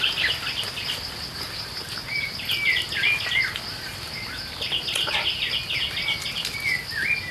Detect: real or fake real